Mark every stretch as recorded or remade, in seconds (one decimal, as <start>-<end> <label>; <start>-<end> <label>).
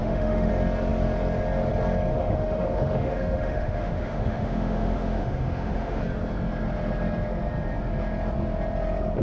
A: 0.0-0.5 remade; 0.5-2.1 recorded; 2.1-6.0 remade; 6.0-9.2 recorded